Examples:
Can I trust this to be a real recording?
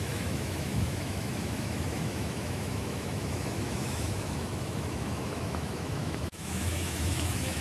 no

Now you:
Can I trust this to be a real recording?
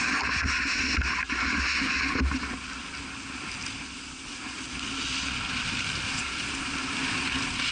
yes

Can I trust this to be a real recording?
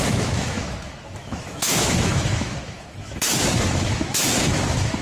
no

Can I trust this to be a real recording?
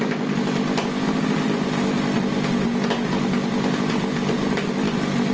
yes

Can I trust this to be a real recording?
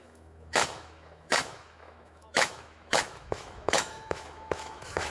no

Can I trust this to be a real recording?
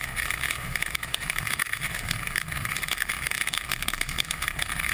no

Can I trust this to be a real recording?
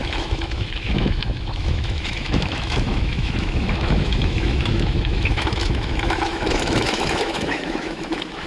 no